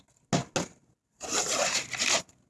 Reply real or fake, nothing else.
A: real